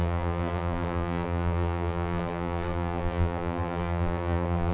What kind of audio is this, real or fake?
fake